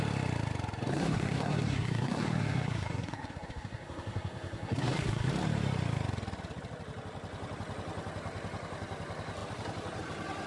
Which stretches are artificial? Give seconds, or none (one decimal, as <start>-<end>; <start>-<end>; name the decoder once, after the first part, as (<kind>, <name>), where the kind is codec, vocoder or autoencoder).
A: 0.9-5.3 (codec, SNAC)